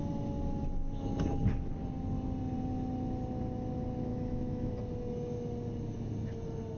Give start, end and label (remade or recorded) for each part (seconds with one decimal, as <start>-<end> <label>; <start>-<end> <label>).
0.0-4.1 recorded; 4.1-4.7 remade; 4.7-6.8 recorded

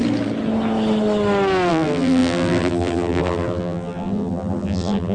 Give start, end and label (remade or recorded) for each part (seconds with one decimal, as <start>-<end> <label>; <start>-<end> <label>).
0.0-1.7 recorded; 1.7-5.1 remade

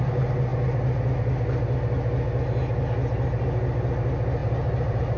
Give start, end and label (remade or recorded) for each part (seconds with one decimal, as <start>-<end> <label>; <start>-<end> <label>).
0.0-4.4 recorded; 4.4-5.2 remade

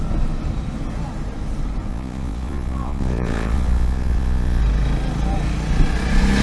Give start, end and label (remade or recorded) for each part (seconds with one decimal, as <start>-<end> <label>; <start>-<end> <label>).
0.0-1.9 recorded; 1.9-4.6 remade; 4.6-6.4 recorded

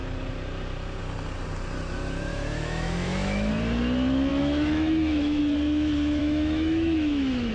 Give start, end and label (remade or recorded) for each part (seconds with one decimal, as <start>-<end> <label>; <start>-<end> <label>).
0.0-2.3 recorded; 2.3-3.5 remade; 3.5-4.3 recorded; 4.3-5.4 remade; 5.4-6.2 recorded; 6.2-7.5 remade

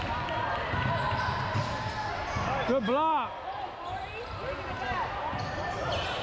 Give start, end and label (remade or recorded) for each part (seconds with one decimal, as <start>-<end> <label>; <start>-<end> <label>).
0.0-6.2 recorded